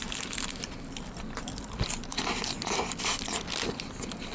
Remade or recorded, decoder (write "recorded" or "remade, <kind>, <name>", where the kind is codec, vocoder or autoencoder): recorded